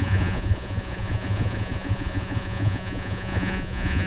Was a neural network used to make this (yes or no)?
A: yes